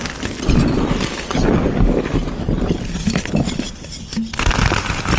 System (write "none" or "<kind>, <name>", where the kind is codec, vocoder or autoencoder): none